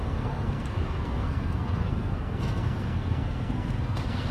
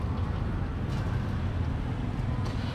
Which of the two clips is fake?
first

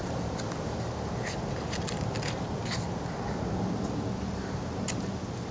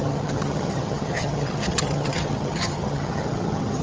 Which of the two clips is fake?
second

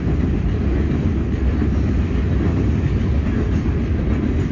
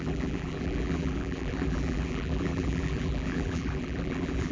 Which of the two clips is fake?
second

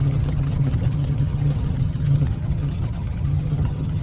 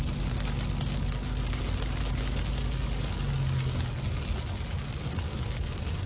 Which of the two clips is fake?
first